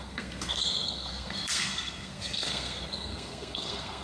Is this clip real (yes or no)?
no